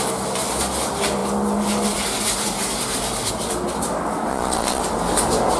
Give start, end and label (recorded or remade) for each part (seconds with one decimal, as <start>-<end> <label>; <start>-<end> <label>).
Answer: 0.0-4.3 recorded; 4.3-4.8 remade; 4.8-5.6 recorded